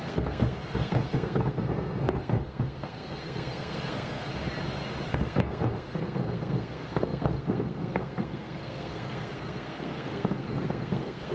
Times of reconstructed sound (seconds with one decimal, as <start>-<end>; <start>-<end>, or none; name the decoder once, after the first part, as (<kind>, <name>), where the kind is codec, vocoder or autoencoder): 0.0-4.3 (codec, SNAC); 5.1-11.3